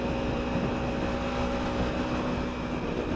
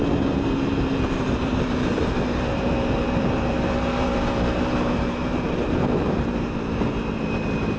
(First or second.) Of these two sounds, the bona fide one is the first